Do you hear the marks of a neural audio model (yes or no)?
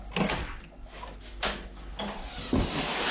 no